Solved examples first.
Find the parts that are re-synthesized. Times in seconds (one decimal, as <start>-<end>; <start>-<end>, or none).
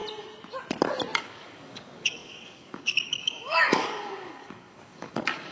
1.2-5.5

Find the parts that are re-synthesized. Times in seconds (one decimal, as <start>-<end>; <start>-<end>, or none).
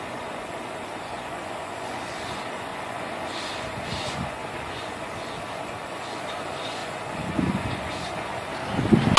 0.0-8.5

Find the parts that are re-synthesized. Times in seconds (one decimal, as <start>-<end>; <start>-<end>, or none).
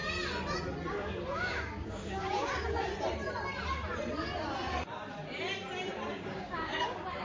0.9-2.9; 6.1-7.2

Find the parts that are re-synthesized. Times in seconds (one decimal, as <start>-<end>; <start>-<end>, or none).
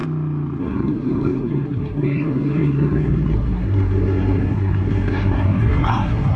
0.6-6.4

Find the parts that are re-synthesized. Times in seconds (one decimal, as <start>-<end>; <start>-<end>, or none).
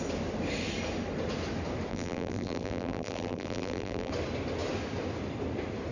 1.9-4.1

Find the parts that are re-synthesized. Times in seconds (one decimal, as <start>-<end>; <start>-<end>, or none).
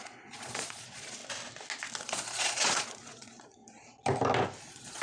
0.0-1.2; 2.0-3.6; 4.6-5.0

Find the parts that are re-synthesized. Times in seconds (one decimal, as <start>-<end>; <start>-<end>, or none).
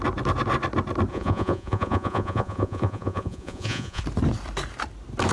1.1-4.0